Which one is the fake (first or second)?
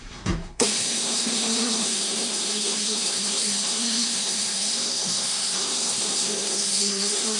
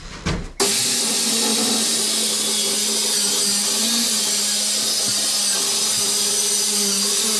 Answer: first